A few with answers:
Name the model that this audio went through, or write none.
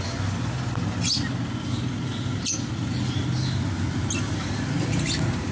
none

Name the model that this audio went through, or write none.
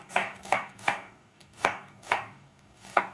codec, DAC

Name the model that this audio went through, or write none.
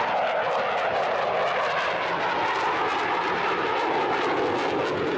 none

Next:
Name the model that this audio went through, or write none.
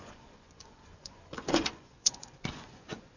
vocoder, Vocos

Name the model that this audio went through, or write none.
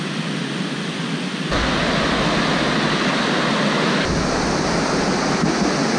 none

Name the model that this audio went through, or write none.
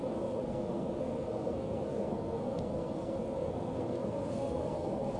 codec, SNAC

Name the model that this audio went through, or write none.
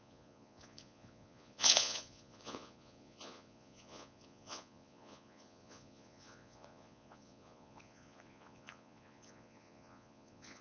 vocoder, Vocos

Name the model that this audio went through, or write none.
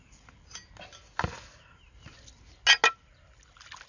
none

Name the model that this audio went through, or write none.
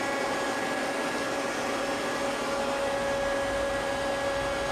none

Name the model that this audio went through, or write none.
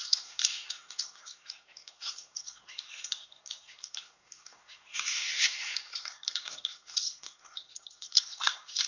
codec, SNAC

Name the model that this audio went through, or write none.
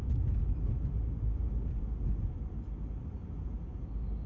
none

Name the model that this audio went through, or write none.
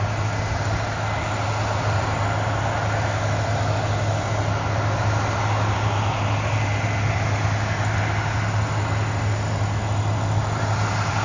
none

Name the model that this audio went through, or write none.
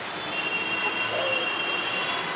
none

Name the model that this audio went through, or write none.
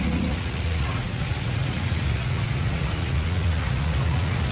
vocoder, Vocos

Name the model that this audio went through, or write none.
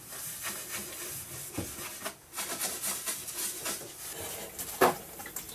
none